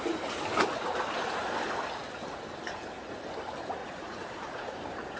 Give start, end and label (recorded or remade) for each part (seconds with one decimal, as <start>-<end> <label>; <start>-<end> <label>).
0.0-3.8 recorded; 3.8-4.8 remade; 4.8-5.2 recorded